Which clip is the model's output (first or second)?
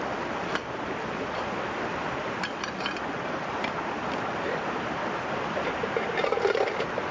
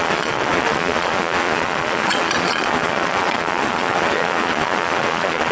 second